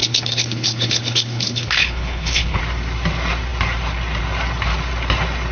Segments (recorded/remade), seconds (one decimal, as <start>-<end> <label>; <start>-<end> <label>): 0.0-2.6 remade; 2.6-5.5 recorded